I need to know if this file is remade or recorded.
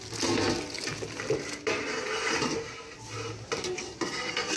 recorded